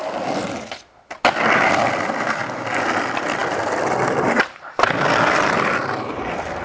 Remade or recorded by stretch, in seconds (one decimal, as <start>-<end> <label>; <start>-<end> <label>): 0.0-6.6 recorded